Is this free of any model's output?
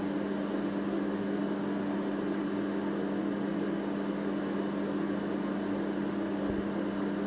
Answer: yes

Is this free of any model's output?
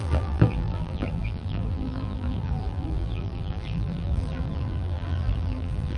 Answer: no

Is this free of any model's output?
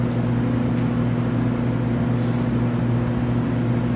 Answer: yes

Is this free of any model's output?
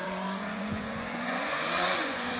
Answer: no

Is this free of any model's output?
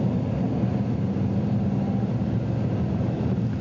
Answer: yes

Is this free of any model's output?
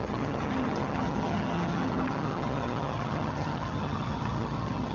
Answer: no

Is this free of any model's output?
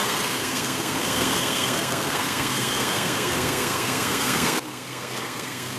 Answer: no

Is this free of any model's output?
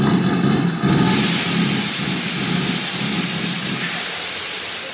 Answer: yes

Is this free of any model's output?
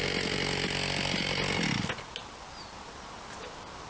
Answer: yes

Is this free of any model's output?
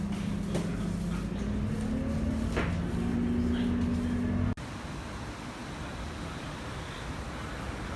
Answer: yes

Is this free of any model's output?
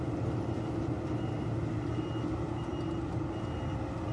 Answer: yes